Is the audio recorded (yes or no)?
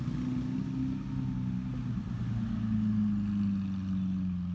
yes